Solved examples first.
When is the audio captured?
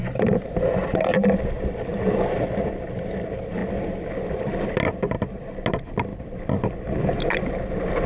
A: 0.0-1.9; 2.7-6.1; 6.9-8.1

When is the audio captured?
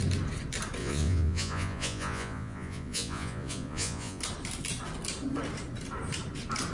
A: 0.0-0.8; 4.2-6.7